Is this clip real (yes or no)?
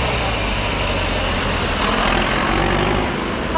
yes